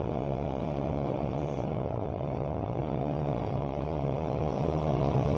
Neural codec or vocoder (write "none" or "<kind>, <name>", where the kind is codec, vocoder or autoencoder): vocoder, WaveNeXt